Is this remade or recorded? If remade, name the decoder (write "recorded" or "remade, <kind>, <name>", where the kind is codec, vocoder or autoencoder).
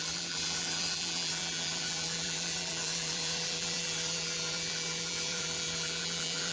remade, vocoder, BigVGAN v2